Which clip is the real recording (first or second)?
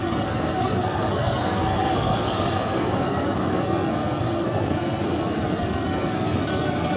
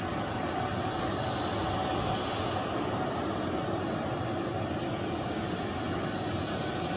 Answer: second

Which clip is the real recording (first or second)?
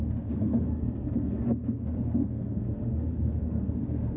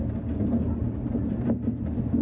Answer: second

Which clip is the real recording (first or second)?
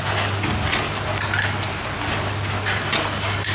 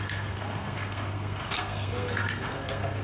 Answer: first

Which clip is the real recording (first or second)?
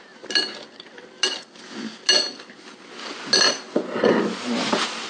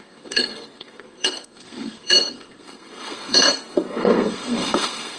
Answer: first